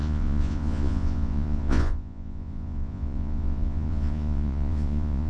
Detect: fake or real fake